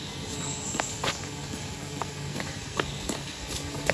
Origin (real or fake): fake